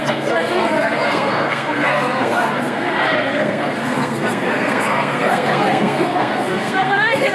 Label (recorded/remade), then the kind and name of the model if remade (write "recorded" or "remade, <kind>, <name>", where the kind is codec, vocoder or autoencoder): remade, codec, SNAC